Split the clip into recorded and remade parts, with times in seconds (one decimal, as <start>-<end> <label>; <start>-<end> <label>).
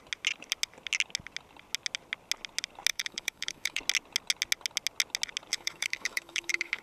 0.0-2.9 recorded; 2.9-3.8 remade; 3.8-5.5 recorded; 5.5-6.8 remade